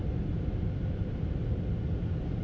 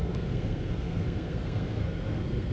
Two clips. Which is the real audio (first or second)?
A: first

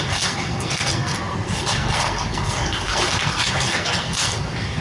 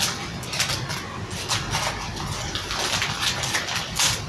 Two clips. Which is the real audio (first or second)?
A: second